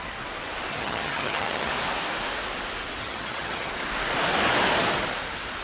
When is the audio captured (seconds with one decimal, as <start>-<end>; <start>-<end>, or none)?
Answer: 0.0-0.7; 1.7-3.0; 3.7-5.6